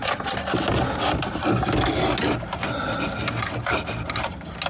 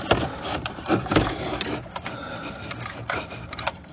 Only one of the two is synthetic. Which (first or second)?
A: second